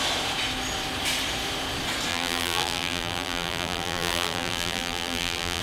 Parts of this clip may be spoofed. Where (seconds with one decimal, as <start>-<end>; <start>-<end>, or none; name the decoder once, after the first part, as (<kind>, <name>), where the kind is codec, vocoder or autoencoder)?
2.1-5.6 (vocoder, BigVGAN v2)